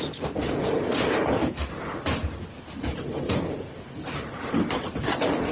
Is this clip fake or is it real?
real